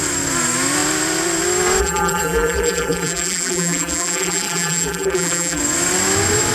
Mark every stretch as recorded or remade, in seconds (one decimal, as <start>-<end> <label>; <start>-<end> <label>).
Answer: 0.0-1.8 recorded; 1.8-5.6 remade; 5.6-6.5 recorded